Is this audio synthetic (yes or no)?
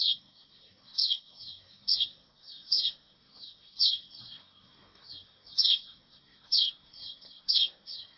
yes